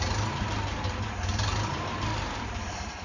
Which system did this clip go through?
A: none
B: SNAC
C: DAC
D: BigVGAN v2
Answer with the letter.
A